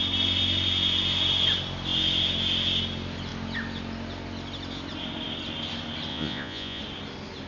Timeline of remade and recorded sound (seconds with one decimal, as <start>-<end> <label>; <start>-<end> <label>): 0.0-6.1 recorded; 6.1-6.8 remade; 6.8-7.5 recorded